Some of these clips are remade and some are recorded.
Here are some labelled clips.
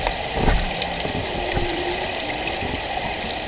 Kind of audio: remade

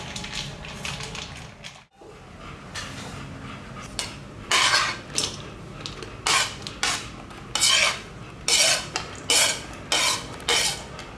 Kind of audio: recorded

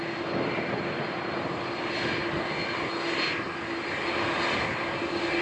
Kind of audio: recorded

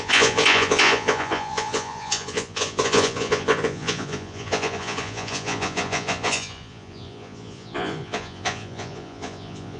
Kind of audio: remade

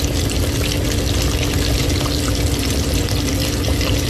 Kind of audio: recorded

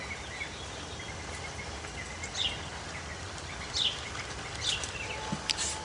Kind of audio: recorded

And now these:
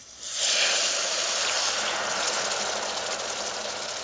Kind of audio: recorded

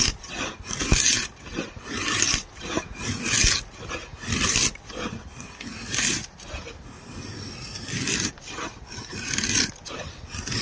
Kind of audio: recorded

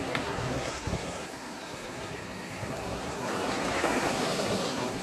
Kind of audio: remade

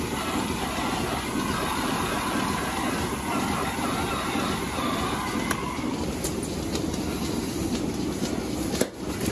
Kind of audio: recorded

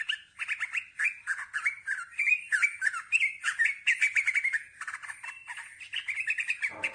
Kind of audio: recorded